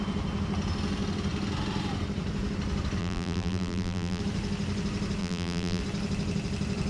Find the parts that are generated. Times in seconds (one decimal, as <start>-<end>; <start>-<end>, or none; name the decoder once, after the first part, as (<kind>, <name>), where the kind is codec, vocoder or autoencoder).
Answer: 3.0-4.2 (vocoder, BigVGAN v2); 5.2-5.8